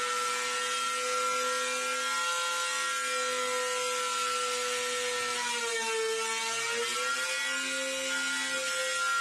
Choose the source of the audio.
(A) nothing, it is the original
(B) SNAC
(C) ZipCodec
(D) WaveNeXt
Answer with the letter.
A